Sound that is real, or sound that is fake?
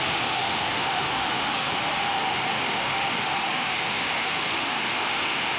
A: fake